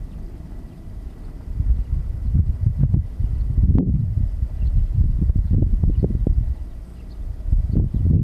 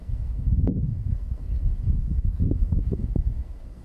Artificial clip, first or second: second